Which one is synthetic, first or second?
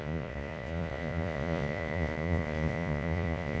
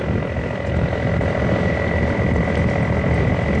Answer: first